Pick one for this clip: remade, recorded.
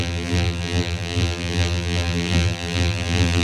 remade